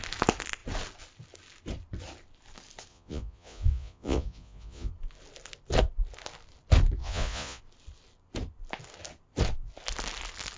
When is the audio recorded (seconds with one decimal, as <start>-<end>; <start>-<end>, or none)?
0.0-2.9; 4.9-7.0; 7.6-10.6